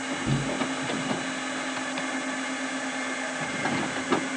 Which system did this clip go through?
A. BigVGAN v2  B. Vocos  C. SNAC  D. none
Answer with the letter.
D